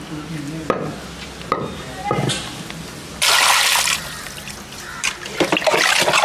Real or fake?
real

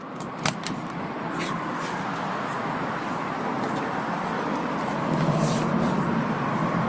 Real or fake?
real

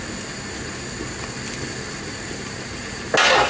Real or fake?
real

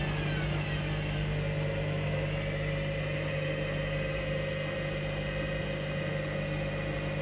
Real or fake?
real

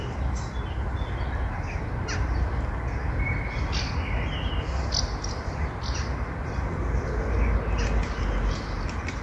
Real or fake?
real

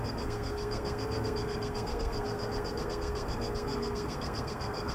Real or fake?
fake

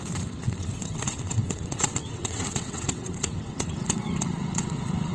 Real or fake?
fake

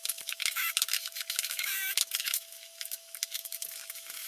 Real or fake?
fake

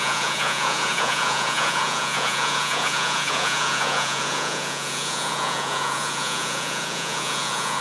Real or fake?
fake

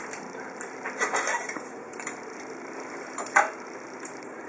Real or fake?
fake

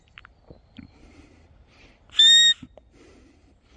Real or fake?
real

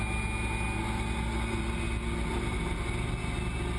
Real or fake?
real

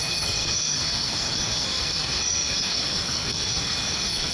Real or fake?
fake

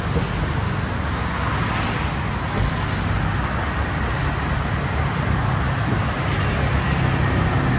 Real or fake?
real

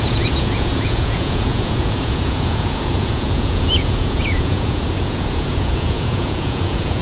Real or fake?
fake